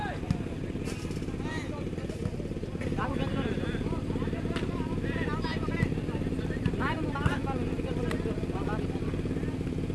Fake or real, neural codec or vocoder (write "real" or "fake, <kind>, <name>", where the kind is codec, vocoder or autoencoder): real